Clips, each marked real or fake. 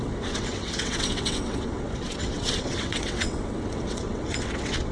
fake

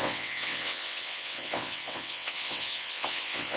fake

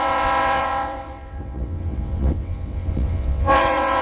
fake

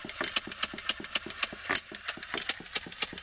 real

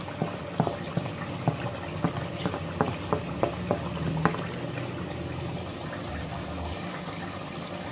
real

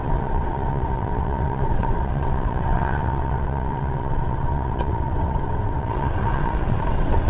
fake